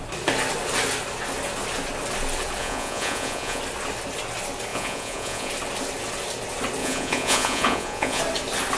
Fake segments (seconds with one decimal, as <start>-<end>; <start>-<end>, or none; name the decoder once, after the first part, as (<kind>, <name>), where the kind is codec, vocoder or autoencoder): 2.6-3.6 (vocoder, Vocos); 4.7-5.5; 6.8-8.2